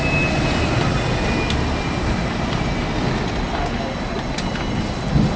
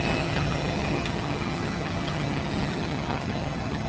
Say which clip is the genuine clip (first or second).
first